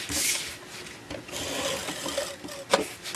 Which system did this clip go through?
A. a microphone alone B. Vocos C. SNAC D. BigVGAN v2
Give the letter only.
A